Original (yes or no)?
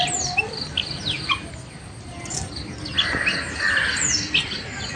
yes